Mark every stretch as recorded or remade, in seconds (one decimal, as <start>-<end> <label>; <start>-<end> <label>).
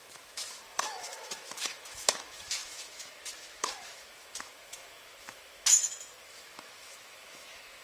0.0-7.8 remade